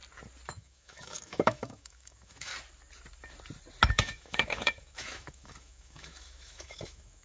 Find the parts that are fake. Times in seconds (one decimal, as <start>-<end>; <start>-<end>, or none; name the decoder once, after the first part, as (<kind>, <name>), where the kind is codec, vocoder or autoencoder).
0.5-2.5 (autoencoder, DAC-VAE); 3.9-7.2